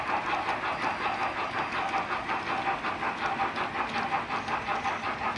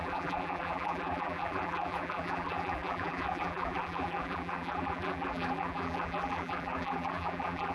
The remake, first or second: second